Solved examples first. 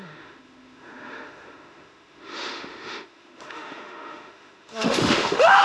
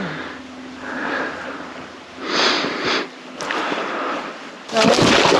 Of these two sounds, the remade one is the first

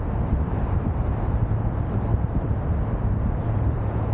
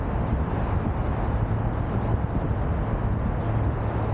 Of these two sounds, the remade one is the first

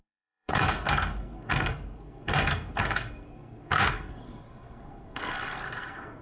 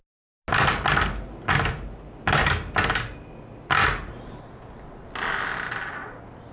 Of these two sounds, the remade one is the first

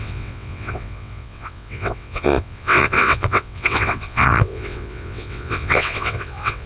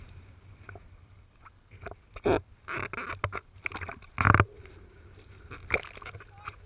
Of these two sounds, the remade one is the first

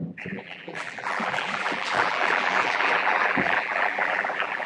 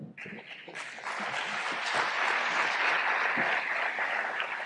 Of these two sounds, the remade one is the first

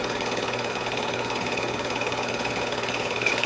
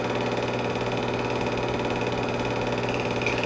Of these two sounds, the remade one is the first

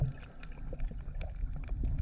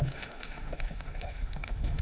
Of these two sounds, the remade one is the second